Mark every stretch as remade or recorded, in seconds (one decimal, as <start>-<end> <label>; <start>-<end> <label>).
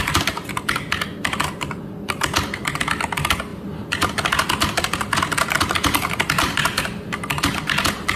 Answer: 0.0-8.2 recorded